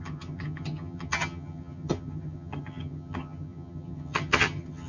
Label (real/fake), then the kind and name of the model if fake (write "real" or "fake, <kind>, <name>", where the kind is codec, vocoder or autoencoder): fake, vocoder, HiFi-GAN